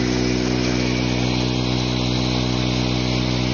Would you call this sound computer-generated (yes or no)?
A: no